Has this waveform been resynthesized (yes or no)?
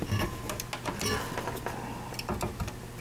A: no